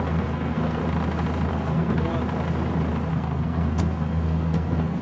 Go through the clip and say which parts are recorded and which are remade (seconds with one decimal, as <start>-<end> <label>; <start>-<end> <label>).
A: 0.0-0.8 remade; 0.8-1.5 recorded; 1.5-2.1 remade; 2.1-3.1 recorded; 3.1-5.0 remade